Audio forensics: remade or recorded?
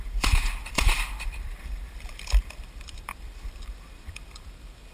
remade